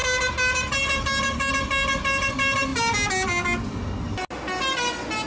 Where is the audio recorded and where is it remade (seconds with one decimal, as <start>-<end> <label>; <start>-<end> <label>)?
0.0-5.3 recorded